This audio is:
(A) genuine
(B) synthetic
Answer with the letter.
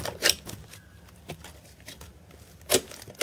A